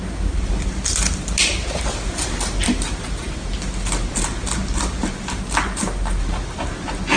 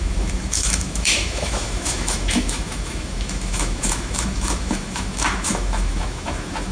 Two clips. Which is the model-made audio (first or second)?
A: second